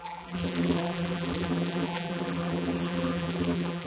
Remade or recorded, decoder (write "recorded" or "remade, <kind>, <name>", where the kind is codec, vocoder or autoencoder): remade, vocoder, BigVGAN v2